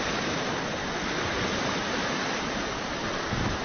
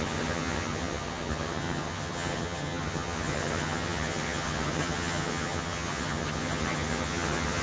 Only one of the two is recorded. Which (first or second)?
first